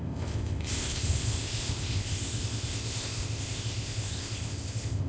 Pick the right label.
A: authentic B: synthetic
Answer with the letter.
B